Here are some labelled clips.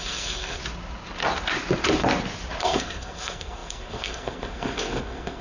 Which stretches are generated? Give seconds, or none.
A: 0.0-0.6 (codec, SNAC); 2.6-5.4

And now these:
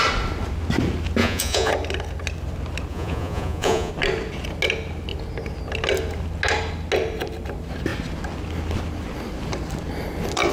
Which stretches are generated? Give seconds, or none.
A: 1.2-1.7 (vocoder, Vocos); 2.9-3.9

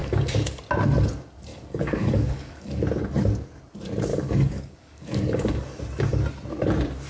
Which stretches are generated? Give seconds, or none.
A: 0.0-0.6 (codec, DAC); 1.5-2.8; 4.1-5.8

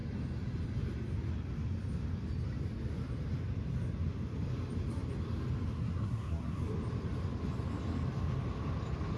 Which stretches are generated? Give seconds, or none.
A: 5.8-6.6 (codec, SNAC)

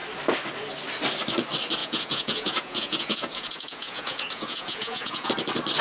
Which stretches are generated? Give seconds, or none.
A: 1.8-5.3 (vocoder, Vocos)

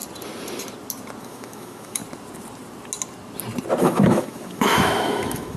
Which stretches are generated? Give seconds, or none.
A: 1.2-2.0 (autoencoder, DAC-VAE); 3.8-5.6